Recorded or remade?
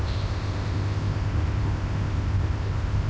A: remade